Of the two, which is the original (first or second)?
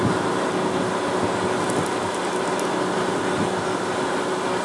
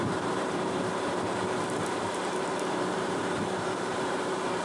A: first